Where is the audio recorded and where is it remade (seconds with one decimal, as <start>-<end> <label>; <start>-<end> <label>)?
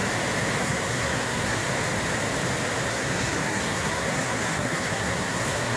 0.0-0.6 recorded; 0.6-1.6 remade; 1.6-2.9 recorded; 2.9-5.8 remade